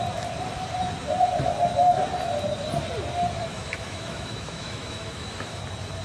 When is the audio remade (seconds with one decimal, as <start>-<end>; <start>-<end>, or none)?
3.5-5.6